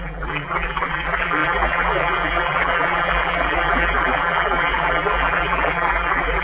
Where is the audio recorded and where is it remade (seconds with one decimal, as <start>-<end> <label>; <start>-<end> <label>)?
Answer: 0.0-6.4 remade